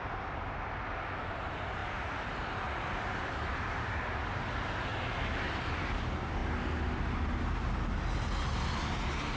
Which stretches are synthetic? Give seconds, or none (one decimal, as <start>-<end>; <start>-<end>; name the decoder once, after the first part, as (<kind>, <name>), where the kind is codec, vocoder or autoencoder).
none